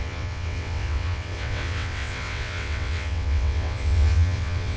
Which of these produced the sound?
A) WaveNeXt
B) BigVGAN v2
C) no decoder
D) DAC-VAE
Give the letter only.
A